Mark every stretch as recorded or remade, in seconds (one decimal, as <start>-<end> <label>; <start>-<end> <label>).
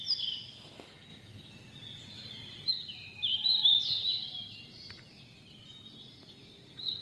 0.0-1.1 recorded; 1.1-2.7 remade; 2.7-7.0 recorded